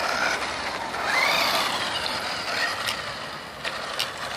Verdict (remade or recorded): recorded